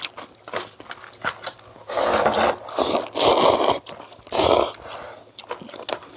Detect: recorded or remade recorded